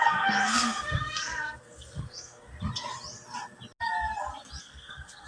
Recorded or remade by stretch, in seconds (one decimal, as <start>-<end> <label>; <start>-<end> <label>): 0.0-2.5 remade; 2.5-4.6 recorded; 4.6-5.3 remade